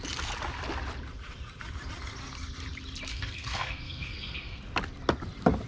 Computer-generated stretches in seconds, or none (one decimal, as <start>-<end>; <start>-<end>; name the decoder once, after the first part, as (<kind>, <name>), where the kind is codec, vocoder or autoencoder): 3.1-4.6 (codec, SNAC)